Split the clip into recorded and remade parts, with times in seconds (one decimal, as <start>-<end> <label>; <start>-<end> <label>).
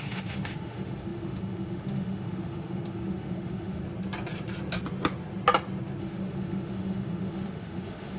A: 0.0-3.8 remade; 3.8-6.0 recorded; 6.0-8.2 remade